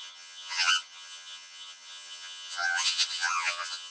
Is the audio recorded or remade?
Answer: remade